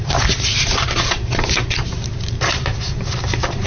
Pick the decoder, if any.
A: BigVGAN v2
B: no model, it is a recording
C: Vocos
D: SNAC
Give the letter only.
A